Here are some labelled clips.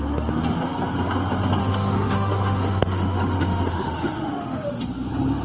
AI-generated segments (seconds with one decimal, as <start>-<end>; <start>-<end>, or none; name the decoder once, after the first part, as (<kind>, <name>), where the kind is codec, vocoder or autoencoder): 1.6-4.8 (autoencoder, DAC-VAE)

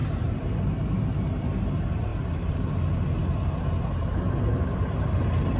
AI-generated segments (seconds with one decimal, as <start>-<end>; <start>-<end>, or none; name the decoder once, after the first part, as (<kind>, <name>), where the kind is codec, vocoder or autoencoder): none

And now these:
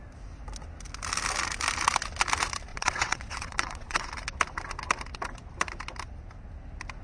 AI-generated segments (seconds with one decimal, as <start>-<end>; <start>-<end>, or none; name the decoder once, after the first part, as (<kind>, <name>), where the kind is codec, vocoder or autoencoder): 2.7-4.1 (vocoder, WaveNeXt)

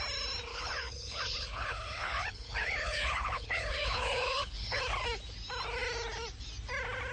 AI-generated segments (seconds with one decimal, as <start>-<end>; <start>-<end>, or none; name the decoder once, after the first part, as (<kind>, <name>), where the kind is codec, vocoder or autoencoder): 0.5-4.8 (codec, HILCodec)

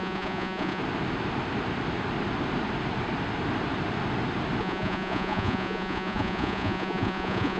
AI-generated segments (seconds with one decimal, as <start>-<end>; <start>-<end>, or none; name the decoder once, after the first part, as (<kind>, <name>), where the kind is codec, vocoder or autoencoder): 0.0-0.8 (vocoder, Vocos); 4.6-7.6